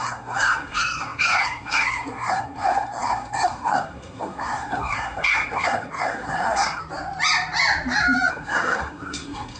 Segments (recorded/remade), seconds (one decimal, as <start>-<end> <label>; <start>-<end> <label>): 0.0-6.8 remade; 6.8-8.3 recorded; 8.3-9.6 remade

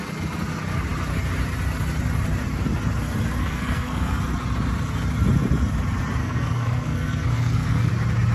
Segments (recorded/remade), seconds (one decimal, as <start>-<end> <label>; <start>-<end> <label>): 0.0-3.4 recorded; 3.4-4.2 remade; 4.2-6.2 recorded; 6.2-7.9 remade; 7.9-8.3 recorded

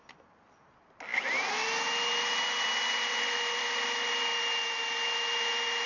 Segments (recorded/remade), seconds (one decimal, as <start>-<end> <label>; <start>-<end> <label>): 0.0-5.9 recorded